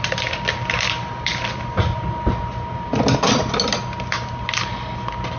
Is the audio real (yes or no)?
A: yes